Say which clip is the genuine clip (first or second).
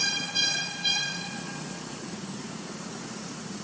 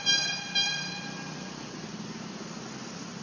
second